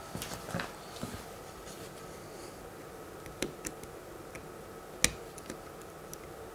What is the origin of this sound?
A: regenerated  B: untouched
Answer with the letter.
B